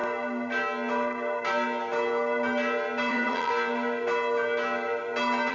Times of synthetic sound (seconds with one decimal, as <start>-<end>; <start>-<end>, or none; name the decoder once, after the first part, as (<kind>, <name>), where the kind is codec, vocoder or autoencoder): 3.1-3.5 (vocoder, HiFi-GAN)

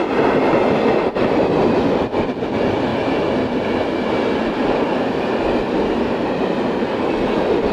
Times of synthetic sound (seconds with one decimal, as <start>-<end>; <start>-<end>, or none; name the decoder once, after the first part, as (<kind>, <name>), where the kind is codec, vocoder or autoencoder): none

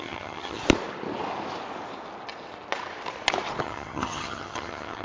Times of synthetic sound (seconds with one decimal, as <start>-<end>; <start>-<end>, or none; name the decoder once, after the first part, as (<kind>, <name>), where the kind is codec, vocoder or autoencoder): 0.0-0.6 (vocoder, HiFi-GAN); 3.6-5.0

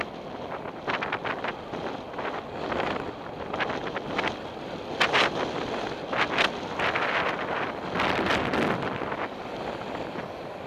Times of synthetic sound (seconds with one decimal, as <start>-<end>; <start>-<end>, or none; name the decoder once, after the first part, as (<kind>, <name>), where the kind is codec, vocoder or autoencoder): none

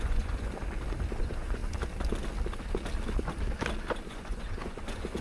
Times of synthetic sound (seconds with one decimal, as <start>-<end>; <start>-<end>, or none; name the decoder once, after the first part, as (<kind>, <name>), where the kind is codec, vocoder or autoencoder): 0.0-0.5 (vocoder, Vocos); 1.2-1.6; 4.1-5.2